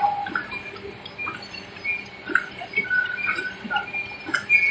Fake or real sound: real